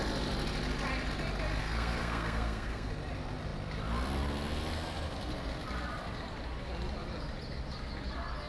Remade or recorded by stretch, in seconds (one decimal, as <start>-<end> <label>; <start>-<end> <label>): 0.0-1.6 recorded; 1.6-2.9 remade; 2.9-8.5 recorded